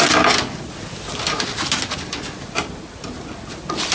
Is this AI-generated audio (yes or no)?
no